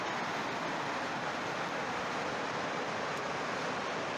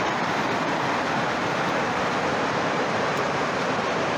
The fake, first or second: second